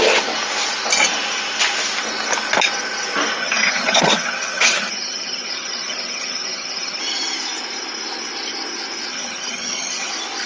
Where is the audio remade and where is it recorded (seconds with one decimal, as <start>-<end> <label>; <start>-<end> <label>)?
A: 0.0-3.4 recorded; 3.4-7.0 remade; 7.0-9.1 recorded; 9.1-10.1 remade; 10.1-10.5 recorded